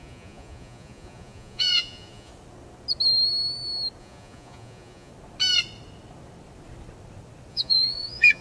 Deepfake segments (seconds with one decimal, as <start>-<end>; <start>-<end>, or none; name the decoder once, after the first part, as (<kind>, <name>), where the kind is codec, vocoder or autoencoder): 0.0-2.3 (vocoder, Vocos); 4.0-5.1; 7.5-8.4